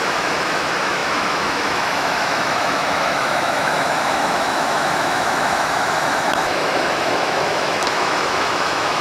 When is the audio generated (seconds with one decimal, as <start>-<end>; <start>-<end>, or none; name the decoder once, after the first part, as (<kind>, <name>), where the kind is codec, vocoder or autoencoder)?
0.0-9.0 (autoencoder, DAC-VAE)

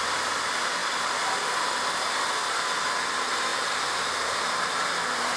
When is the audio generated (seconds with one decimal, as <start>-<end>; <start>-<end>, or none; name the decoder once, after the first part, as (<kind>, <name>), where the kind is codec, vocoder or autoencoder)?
0.0-0.8 (vocoder, BigVGAN v2); 2.9-5.4